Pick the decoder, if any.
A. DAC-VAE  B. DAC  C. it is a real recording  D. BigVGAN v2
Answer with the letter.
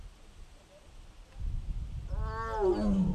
C